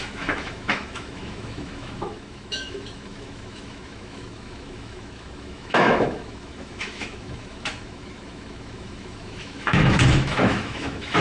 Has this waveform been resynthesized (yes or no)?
yes